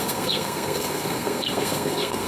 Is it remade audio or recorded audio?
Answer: remade